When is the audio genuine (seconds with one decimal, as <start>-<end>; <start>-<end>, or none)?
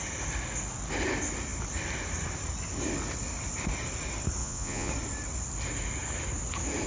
0.0-4.4; 4.9-6.9